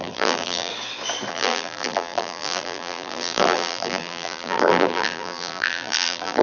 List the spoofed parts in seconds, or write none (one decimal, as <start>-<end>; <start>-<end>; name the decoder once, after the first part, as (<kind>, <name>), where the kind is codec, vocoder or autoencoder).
0.0-0.7 (vocoder, BigVGAN v2); 1.3-6.4